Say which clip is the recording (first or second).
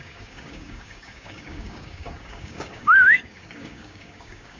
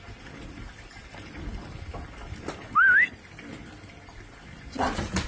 second